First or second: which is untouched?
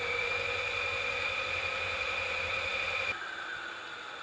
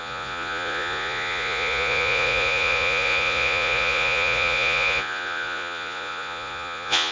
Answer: first